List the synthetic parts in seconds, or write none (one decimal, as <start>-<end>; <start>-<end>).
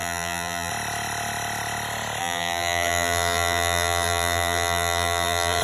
0.0-0.7; 2.2-5.6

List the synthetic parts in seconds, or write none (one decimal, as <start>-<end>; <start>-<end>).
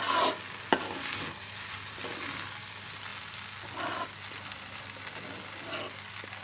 none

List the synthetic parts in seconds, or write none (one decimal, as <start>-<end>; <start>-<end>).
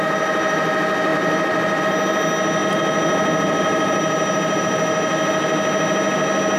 none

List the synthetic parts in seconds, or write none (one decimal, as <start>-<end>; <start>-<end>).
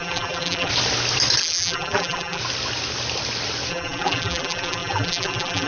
0.0-0.7; 1.4-2.4; 3.7-5.7